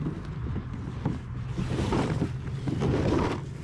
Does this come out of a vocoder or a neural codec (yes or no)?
no